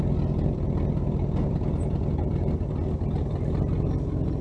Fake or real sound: real